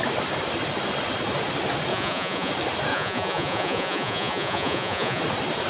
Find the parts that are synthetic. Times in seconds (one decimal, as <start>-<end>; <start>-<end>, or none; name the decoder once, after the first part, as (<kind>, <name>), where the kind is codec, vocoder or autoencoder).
1.9-2.5 (vocoder, Vocos); 2.9-5.2